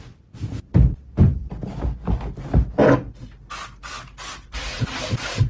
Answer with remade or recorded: recorded